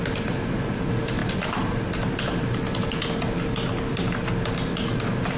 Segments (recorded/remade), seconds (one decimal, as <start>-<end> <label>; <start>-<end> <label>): 0.0-5.4 recorded